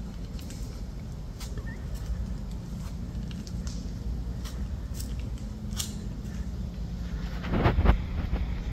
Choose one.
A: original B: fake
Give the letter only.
A